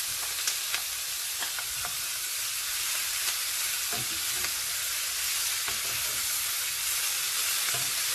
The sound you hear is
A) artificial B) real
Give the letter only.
B